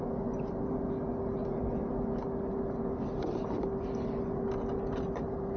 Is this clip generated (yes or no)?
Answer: no